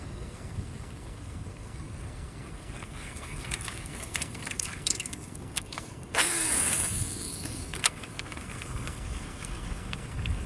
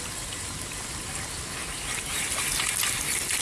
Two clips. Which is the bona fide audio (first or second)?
second